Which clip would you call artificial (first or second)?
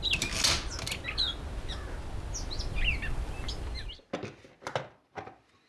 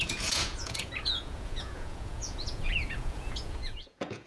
second